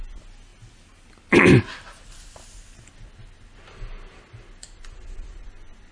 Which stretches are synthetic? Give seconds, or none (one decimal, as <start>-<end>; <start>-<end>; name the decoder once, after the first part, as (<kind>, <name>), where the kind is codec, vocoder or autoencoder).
none